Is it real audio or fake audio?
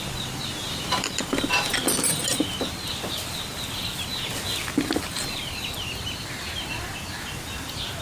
fake